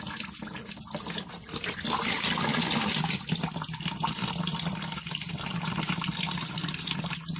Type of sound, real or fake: real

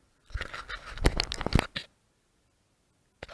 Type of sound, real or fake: real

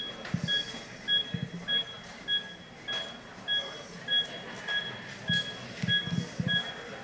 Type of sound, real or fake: real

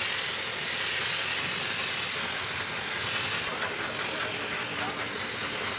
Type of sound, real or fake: real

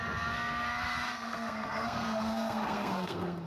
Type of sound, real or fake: fake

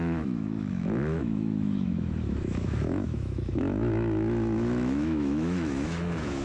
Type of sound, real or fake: fake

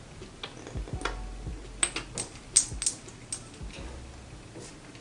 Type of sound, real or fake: real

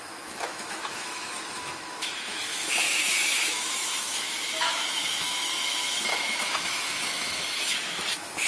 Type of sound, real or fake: fake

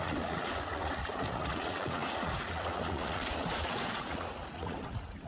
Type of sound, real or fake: fake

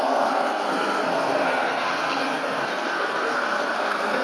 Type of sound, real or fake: fake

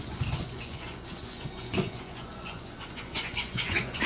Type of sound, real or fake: fake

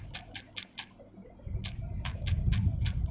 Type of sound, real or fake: real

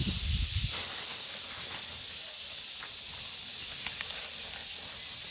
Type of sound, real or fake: real